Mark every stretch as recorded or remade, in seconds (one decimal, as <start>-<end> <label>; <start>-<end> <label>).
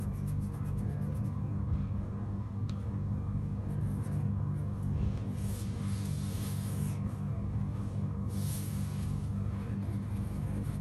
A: 0.0-10.8 remade